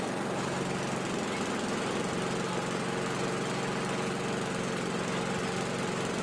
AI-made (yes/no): no